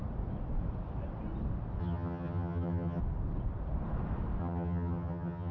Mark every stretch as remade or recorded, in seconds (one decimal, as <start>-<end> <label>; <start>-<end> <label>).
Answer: 0.0-1.8 recorded; 1.8-3.0 remade; 3.0-4.4 recorded; 4.4-5.5 remade